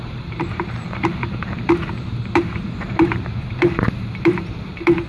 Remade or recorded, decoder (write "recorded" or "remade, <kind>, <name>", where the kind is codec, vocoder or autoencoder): remade, vocoder, BigVGAN v2